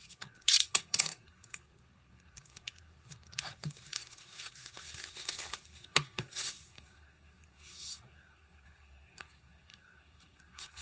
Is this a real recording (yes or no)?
no